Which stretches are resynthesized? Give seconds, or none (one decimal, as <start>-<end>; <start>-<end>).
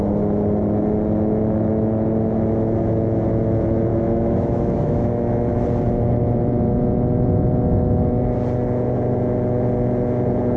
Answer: 3.9-5.1